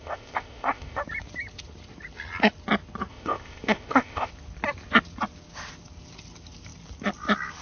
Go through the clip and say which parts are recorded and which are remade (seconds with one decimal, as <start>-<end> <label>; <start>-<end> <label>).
0.0-1.0 remade; 1.0-3.1 recorded; 3.1-4.3 remade; 4.3-7.6 recorded